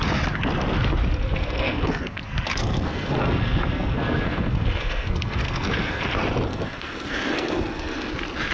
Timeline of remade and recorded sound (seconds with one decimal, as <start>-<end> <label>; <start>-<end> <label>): 0.0-1.4 recorded; 1.4-6.0 remade; 6.0-6.5 recorded; 6.5-8.0 remade; 8.0-8.5 recorded